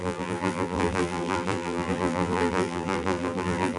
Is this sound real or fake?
fake